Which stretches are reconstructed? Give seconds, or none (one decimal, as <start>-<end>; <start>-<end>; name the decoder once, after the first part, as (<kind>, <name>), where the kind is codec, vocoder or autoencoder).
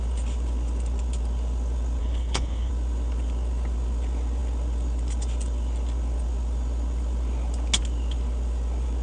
2.0-2.7 (codec, HILCodec)